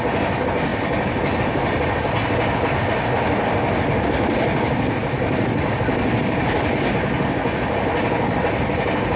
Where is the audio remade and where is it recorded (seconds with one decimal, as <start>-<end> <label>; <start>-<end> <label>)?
0.0-9.2 recorded